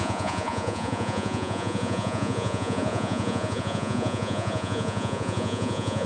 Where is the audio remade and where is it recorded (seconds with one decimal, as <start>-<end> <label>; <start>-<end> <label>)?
0.0-6.1 remade

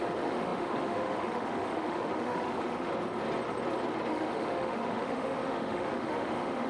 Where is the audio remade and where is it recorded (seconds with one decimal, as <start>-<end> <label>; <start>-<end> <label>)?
0.0-2.9 remade; 2.9-4.1 recorded; 4.1-6.7 remade

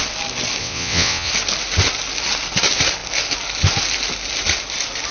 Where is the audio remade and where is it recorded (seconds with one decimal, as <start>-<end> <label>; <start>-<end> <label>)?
0.0-0.6 recorded; 0.6-1.3 remade; 1.3-5.1 recorded

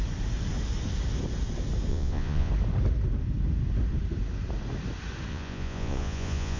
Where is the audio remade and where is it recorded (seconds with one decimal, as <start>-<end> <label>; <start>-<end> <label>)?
0.0-1.9 recorded; 1.9-2.5 remade; 2.5-5.3 recorded; 5.3-6.6 remade

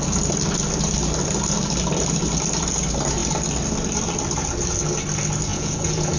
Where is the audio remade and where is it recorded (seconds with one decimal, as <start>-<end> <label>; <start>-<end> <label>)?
0.0-5.5 recorded; 5.5-6.2 remade